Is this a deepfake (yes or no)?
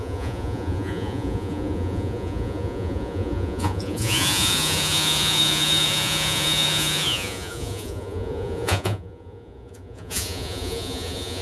yes